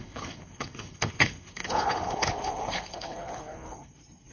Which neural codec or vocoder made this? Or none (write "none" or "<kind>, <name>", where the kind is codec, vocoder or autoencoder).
codec, HILCodec